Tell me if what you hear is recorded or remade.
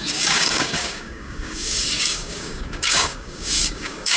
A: remade